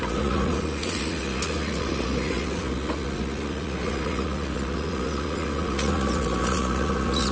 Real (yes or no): no